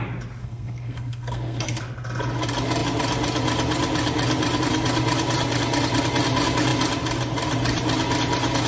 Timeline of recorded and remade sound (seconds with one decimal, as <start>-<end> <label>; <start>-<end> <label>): 0.0-0.4 recorded; 0.4-1.8 remade; 1.8-8.7 recorded